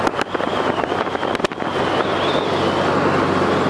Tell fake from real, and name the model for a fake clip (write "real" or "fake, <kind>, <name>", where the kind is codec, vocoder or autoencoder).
real